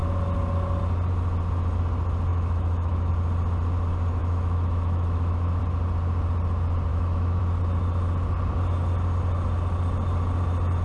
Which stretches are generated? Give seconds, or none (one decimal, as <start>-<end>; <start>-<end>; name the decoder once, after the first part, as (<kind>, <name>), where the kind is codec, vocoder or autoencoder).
2.3-3.1 (autoencoder, DAC-VAE); 4.2-5.6; 6.9-7.4